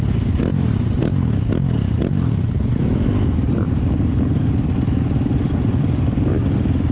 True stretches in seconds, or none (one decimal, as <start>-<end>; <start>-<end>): 0.0-6.9